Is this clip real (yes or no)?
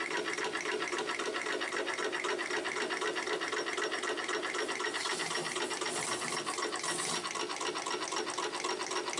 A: yes